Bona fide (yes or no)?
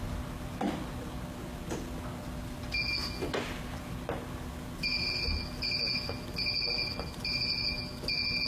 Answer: yes